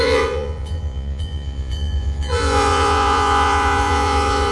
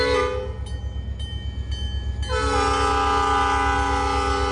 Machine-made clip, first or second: first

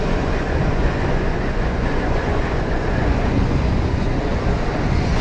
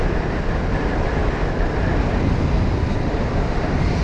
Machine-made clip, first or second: first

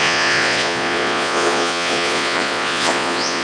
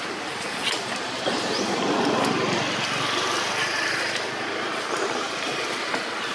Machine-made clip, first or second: first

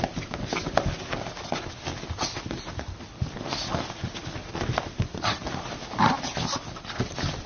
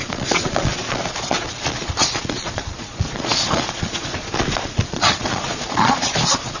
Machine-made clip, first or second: second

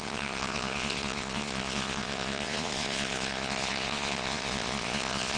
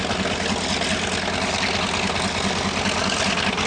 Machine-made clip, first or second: first